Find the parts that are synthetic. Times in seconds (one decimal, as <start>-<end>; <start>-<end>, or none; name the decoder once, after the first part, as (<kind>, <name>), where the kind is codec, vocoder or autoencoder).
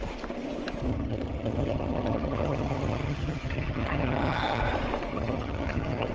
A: 0.9-4.6 (vocoder, HiFi-GAN); 5.1-6.1